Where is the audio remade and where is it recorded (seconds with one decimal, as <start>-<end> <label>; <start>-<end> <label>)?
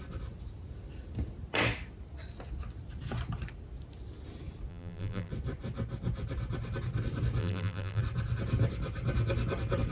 0.0-4.7 recorded; 4.7-5.3 remade; 5.3-7.4 recorded; 7.4-8.0 remade; 8.0-9.9 recorded